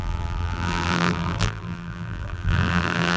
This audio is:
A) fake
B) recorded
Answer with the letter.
A